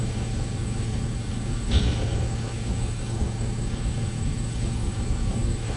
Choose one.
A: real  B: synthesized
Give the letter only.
B